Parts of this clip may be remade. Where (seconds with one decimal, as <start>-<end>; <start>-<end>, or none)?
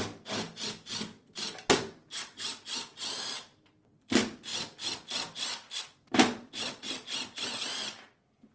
none